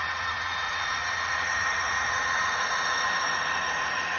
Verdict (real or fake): fake